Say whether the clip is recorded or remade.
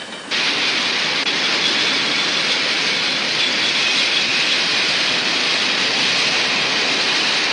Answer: recorded